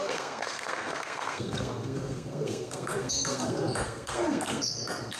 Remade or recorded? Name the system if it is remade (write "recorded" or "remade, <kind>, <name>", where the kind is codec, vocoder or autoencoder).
remade, codec, SNAC